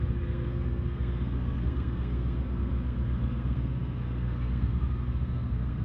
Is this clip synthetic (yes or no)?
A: yes